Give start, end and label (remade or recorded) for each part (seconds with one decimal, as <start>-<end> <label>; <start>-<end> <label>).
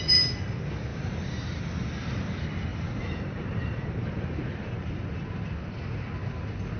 0.0-0.9 recorded; 0.9-1.7 remade; 1.7-2.7 recorded; 2.7-5.0 remade; 5.0-6.8 recorded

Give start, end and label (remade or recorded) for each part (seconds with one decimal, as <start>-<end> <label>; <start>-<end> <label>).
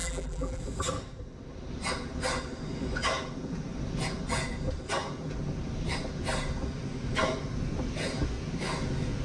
0.0-0.6 remade; 0.6-9.2 recorded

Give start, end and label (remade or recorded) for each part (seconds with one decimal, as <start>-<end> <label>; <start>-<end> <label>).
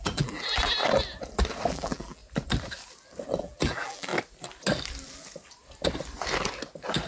0.0-0.8 remade; 0.8-1.7 recorded; 1.7-2.2 remade; 2.2-3.4 recorded; 3.4-4.1 remade; 4.1-7.1 recorded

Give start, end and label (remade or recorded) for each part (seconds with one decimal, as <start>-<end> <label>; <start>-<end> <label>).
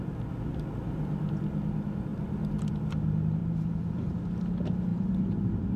0.0-3.4 recorded; 3.4-4.3 remade; 4.3-4.9 recorded; 4.9-5.8 remade